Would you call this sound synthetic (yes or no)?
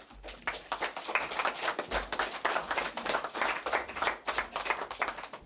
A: no